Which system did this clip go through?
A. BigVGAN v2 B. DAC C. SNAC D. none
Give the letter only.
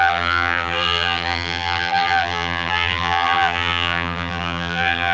A